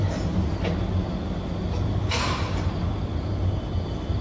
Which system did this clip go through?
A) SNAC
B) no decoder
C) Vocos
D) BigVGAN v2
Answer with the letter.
B